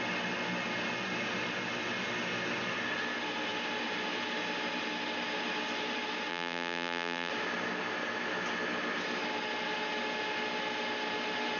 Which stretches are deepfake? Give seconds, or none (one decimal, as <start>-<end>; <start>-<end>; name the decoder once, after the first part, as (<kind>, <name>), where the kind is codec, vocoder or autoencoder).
6.3-7.3 (vocoder, BigVGAN v2)